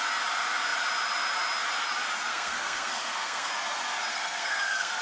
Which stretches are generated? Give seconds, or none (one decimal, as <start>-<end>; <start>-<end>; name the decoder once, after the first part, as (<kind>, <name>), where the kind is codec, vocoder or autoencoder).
2.3-3.5 (codec, SNAC); 4.1-5.0